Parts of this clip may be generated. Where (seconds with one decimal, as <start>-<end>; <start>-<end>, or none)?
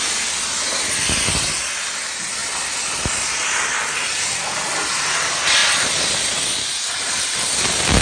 none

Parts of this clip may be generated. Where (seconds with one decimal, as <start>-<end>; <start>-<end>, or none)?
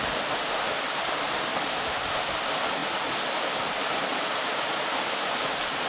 none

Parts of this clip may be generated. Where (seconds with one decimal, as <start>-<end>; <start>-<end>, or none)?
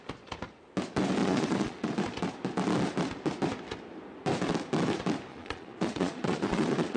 1.2-1.9; 5.3-7.0